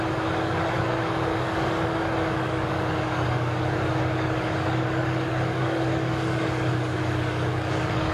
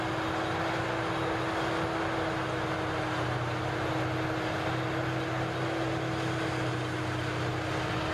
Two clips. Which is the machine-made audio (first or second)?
first